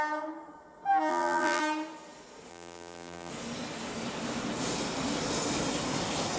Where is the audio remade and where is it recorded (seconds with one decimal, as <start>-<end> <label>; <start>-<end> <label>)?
0.0-1.1 recorded; 1.1-1.6 remade; 1.6-2.5 recorded; 2.5-3.3 remade; 3.3-6.4 recorded